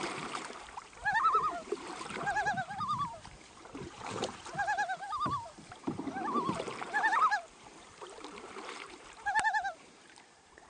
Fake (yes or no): yes